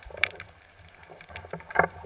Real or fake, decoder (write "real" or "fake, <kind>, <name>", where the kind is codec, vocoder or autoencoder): fake, vocoder, BigVGAN v2